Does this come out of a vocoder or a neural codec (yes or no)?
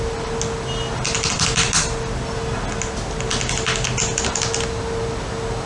no